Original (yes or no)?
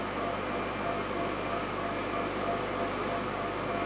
yes